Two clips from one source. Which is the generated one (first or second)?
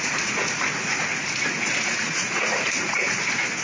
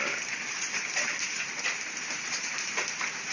first